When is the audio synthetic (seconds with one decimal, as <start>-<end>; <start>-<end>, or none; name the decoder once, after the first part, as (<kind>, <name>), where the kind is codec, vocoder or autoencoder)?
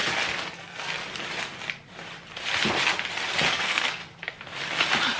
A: 0.5-1.0 (codec, SNAC); 3.5-4.0